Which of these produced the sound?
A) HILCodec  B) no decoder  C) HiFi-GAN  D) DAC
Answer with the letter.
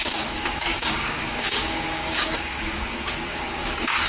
D